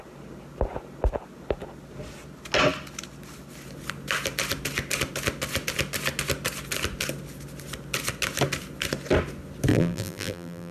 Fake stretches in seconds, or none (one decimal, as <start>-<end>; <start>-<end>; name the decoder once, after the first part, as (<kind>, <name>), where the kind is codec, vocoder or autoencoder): 9.7-10.7 (vocoder, BigVGAN v2)